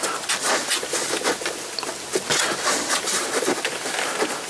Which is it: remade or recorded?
recorded